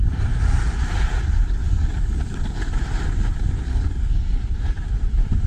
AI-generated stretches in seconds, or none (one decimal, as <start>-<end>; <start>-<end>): 1.6-2.4; 3.7-4.3